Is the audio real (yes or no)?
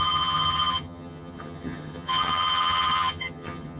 no